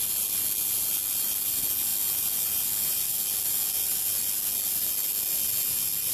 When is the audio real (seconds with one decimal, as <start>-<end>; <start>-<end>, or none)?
none